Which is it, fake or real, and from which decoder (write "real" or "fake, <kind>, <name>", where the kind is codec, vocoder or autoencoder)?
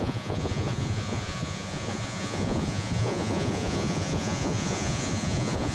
fake, vocoder, Vocos